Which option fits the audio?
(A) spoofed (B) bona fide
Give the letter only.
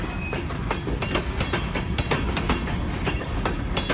B